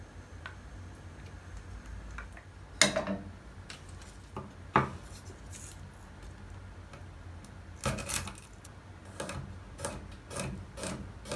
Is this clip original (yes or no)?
yes